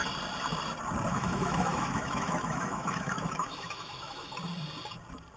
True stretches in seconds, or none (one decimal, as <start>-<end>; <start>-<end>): 0.0-1.1; 4.3-5.4

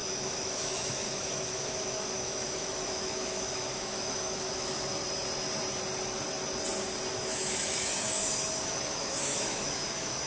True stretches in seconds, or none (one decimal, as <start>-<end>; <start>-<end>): 5.0-7.1

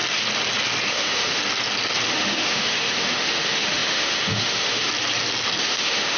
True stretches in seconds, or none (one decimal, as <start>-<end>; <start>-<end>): 0.0-0.9; 1.4-2.1; 4.9-5.6

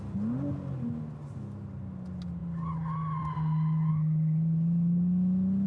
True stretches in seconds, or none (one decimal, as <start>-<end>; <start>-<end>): 0.0-5.7

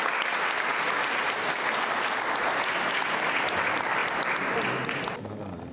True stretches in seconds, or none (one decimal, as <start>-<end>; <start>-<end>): 0.0-5.7

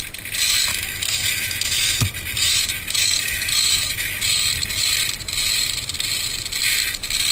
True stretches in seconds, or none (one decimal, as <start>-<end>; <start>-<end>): 0.0-0.7; 4.4-7.3

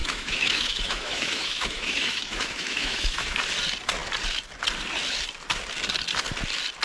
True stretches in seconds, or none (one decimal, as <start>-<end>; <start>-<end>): 3.4-6.8